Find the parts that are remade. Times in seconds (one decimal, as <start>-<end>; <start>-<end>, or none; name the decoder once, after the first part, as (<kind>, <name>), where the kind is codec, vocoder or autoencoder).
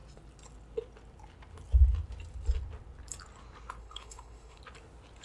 3.8-4.6 (codec, HILCodec)